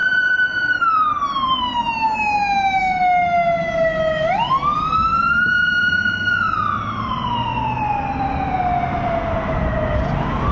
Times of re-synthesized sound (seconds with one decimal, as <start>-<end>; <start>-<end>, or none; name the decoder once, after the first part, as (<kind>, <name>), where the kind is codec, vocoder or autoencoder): 0.0-1.6 (vocoder, BigVGAN v2); 5.8-7.3